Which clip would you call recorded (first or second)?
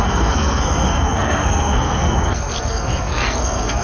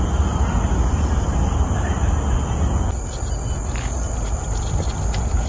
second